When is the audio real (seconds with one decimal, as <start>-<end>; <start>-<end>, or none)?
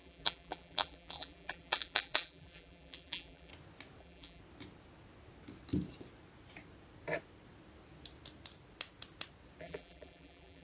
3.5-4.0; 4.4-9.6